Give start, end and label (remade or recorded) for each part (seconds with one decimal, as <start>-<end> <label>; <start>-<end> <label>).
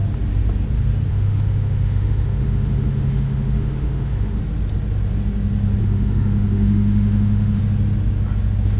0.0-1.1 recorded; 1.1-4.4 remade; 4.4-5.8 recorded; 5.8-7.6 remade; 7.6-8.8 recorded